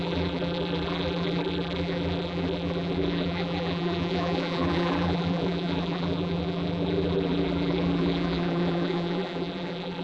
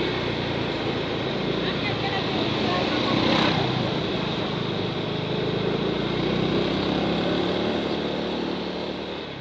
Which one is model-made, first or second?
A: first